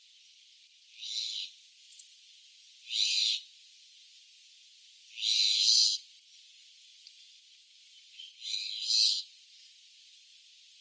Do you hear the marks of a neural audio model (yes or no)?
no